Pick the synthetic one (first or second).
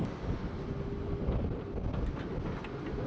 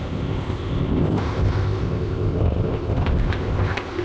second